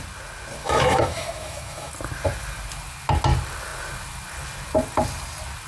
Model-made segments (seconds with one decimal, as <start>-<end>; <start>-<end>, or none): 0.6-1.9